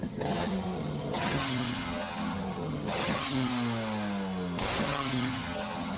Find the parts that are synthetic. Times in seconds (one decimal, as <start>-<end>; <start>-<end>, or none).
0.0-3.5; 4.8-6.0